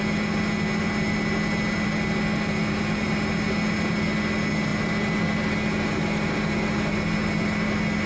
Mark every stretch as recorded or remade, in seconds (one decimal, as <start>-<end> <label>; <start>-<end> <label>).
0.0-8.1 recorded

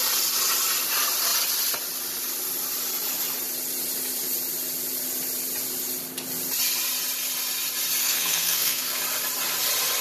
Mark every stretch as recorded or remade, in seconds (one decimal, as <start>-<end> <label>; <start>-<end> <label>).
0.0-8.0 recorded; 8.0-9.0 remade; 9.0-10.0 recorded

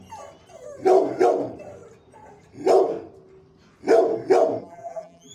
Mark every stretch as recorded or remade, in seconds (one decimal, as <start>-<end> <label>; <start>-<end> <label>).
0.0-4.6 recorded; 4.6-5.3 remade

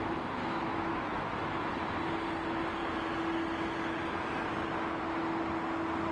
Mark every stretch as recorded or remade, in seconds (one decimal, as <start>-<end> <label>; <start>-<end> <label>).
0.0-0.4 recorded; 0.4-1.7 remade; 1.7-6.1 recorded

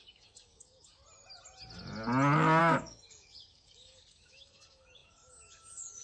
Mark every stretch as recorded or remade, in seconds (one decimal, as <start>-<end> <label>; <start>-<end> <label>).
0.0-1.0 remade; 1.0-2.6 recorded; 2.6-6.0 remade

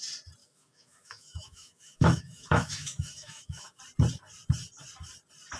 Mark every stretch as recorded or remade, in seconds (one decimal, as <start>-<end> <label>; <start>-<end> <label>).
0.0-0.4 recorded; 0.4-3.8 remade; 3.8-5.6 recorded

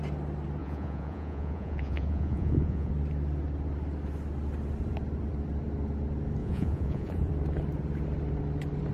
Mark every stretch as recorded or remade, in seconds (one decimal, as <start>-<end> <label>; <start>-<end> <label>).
0.0-0.6 recorded; 0.6-2.9 remade; 2.9-6.4 recorded; 6.4-7.3 remade; 7.3-8.9 recorded